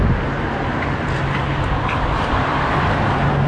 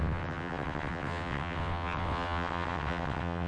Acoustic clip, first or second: first